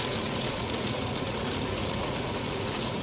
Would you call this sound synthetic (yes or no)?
yes